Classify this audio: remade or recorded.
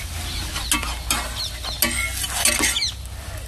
recorded